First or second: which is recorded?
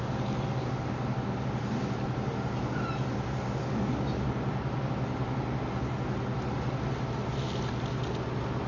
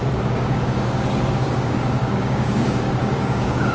first